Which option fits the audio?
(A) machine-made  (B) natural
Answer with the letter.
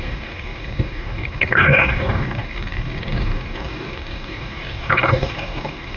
A